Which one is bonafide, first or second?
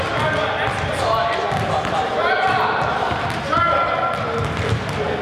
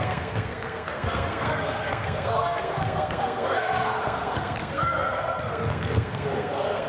first